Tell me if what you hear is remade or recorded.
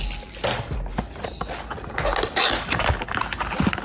recorded